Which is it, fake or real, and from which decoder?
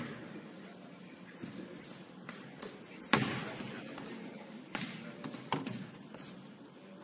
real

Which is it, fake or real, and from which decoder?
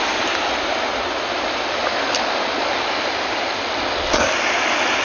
real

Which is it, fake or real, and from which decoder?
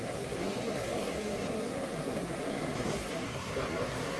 fake, codec, SNAC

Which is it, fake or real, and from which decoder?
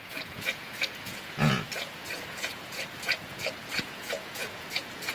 fake, vocoder, Vocos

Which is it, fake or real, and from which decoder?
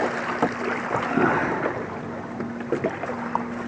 real